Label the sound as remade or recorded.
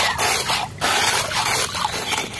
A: recorded